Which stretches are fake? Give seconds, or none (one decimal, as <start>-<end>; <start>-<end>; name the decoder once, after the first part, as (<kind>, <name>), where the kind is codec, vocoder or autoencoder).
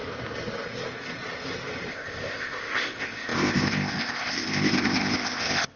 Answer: 1.9-5.8 (codec, ZipCodec)